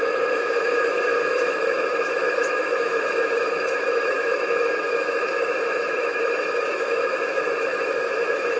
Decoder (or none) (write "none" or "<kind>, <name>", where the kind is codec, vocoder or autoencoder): autoencoder, DAC-VAE